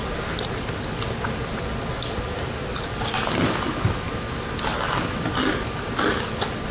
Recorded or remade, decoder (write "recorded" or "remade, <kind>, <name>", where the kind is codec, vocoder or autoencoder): recorded